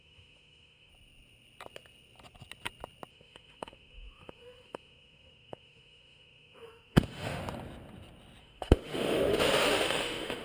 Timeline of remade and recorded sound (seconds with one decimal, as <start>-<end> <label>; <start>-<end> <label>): 0.0-0.9 remade; 0.9-3.1 recorded; 3.1-7.4 remade; 7.4-8.4 recorded; 8.4-10.4 remade